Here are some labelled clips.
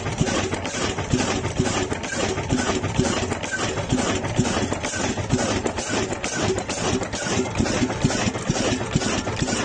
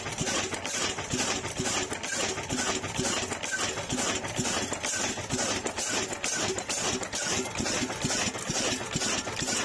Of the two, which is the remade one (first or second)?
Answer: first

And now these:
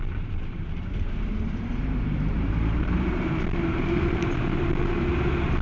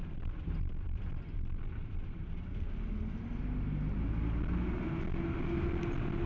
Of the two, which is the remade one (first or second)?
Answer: first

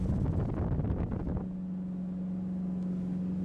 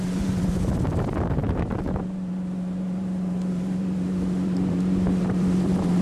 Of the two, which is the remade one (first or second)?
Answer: second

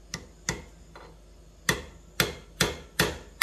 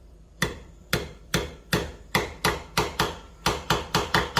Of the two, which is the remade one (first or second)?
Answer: second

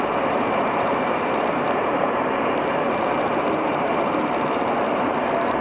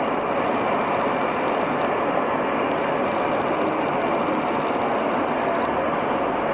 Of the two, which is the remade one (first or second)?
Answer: first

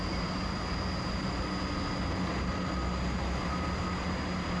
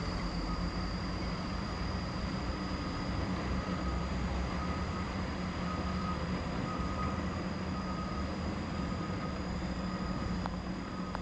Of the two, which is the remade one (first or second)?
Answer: second